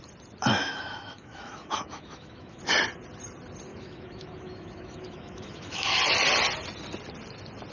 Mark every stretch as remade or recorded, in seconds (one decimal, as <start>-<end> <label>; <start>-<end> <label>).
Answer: 0.0-0.5 recorded; 0.5-2.6 remade; 2.6-3.7 recorded; 3.7-6.0 remade; 6.0-7.7 recorded